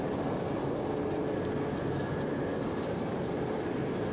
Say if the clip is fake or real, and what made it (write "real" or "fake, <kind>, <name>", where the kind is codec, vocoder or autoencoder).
real